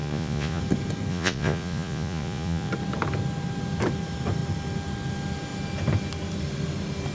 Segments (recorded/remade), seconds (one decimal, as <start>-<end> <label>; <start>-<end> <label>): 0.0-0.6 remade; 0.6-1.1 recorded; 1.1-2.7 remade; 2.7-7.1 recorded